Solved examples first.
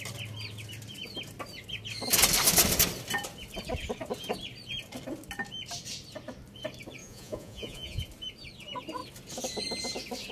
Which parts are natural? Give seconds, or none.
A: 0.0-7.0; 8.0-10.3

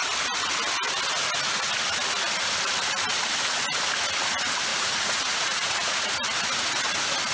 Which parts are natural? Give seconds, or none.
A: 0.0-4.7; 6.1-7.3

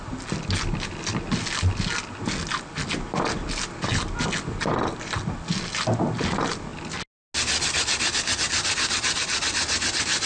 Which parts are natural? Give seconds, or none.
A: 0.0-10.3

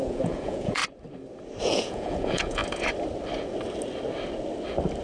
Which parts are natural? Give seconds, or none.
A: 0.8-1.6; 2.6-5.0